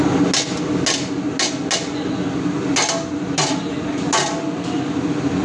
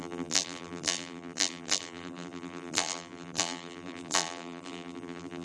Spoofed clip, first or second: second